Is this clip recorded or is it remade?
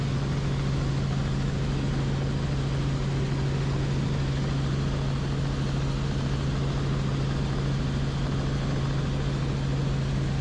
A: recorded